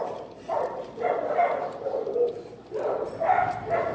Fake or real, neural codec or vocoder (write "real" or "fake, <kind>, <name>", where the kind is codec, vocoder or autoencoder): real